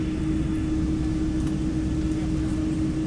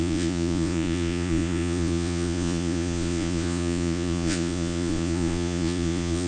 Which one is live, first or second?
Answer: first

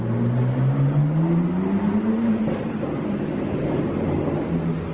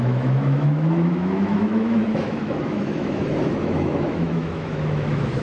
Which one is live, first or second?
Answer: first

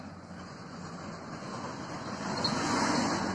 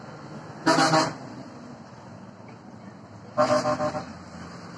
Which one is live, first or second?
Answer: second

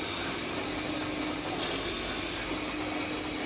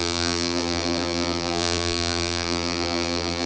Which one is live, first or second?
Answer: first